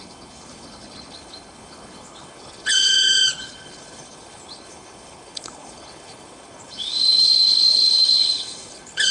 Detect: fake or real fake